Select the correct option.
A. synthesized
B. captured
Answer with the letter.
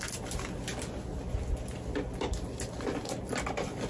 B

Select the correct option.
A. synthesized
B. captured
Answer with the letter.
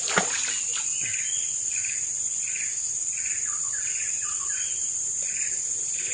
B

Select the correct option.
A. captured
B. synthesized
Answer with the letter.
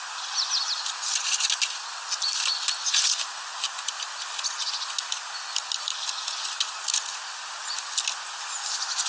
A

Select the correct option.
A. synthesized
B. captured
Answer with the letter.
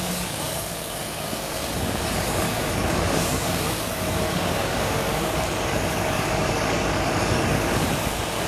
A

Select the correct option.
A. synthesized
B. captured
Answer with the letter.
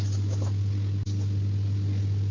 B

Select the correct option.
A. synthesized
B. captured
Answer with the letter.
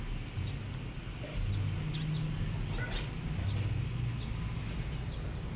B